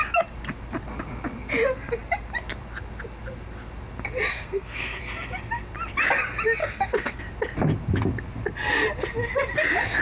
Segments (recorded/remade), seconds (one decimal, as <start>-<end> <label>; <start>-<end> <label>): 0.0-4.3 recorded; 4.3-5.0 remade; 5.0-6.6 recorded; 6.6-7.2 remade; 7.2-10.0 recorded